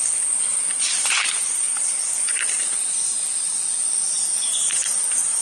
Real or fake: fake